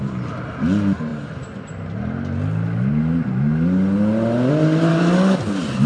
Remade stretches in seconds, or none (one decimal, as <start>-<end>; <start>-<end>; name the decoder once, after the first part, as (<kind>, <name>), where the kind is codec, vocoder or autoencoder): 4.9-5.4 (codec, DAC)